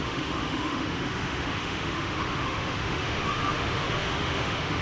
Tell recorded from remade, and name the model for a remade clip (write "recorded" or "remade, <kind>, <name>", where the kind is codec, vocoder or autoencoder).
remade, autoencoder, DAC-VAE